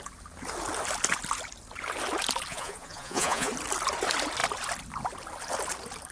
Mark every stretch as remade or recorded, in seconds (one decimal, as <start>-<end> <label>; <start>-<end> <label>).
0.0-2.5 recorded; 2.5-3.5 remade; 3.5-6.1 recorded